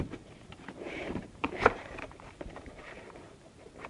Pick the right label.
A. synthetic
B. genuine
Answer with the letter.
A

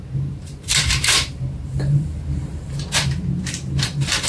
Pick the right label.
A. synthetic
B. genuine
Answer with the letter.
A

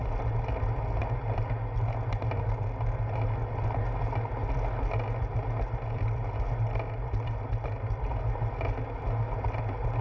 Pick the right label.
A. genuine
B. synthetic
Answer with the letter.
A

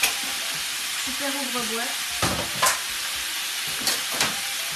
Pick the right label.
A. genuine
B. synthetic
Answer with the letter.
B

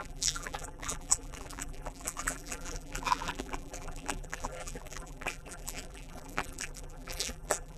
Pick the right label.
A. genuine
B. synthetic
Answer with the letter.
B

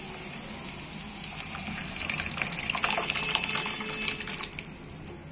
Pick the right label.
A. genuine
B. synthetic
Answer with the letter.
A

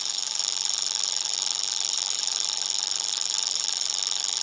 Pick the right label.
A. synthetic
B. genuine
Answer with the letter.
A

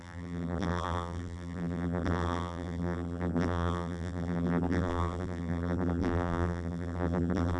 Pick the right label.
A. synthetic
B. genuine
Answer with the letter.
A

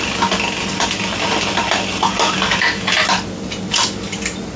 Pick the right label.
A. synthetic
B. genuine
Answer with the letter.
B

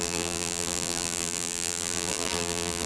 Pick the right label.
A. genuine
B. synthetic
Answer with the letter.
B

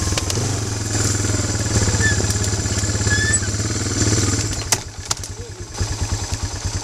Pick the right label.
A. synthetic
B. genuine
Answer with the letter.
B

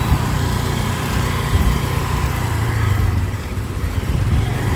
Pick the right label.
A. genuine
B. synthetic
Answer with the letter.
B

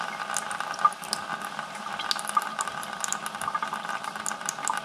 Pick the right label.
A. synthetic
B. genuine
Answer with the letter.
B